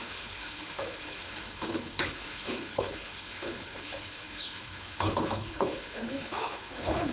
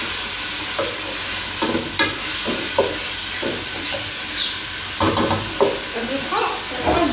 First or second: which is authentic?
second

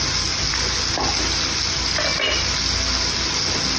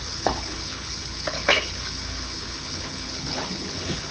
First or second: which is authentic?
first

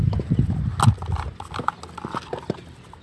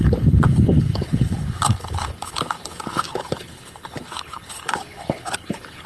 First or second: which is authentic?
first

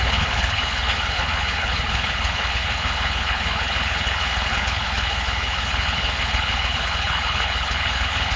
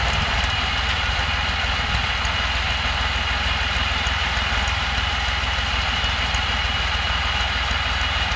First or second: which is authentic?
second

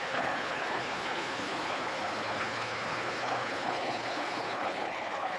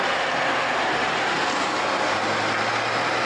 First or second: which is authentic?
second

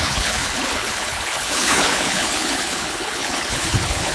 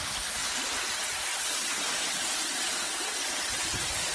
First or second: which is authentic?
second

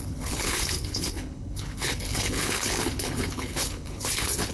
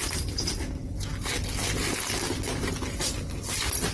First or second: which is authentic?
second